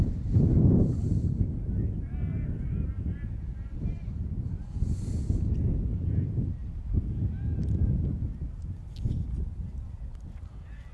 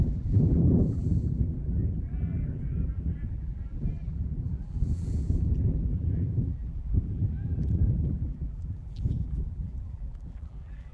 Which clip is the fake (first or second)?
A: second